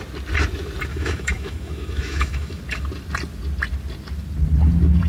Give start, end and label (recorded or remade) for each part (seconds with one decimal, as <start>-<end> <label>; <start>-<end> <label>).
0.0-0.9 recorded; 0.9-2.6 remade; 2.6-5.1 recorded